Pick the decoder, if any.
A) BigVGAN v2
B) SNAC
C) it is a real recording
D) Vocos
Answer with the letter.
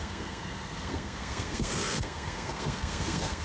B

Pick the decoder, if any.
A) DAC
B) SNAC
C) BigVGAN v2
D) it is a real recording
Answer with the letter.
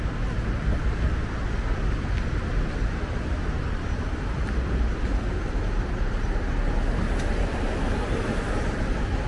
D